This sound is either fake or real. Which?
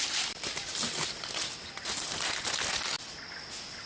real